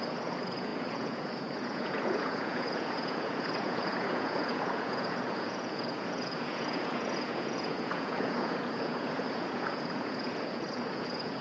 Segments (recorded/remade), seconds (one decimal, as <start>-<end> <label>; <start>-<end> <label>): 0.0-11.4 remade

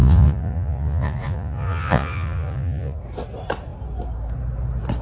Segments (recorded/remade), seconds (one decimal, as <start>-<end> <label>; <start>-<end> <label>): 0.0-3.0 remade; 3.0-5.0 recorded

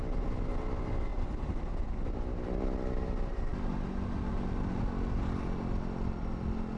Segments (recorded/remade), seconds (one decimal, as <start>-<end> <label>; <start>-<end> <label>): 0.0-6.8 recorded

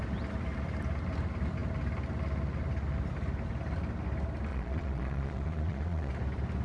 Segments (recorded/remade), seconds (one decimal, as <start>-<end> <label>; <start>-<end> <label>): 0.0-4.5 recorded; 4.5-6.1 remade; 6.1-6.6 recorded

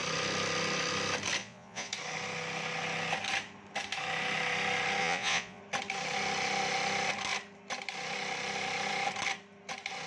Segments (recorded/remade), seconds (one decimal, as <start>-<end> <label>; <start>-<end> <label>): 0.0-1.4 recorded; 1.4-1.9 remade; 1.9-5.0 recorded; 5.0-5.6 remade; 5.6-10.1 recorded

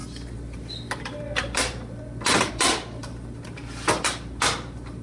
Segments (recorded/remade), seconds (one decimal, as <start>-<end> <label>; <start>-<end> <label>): 0.0-5.0 recorded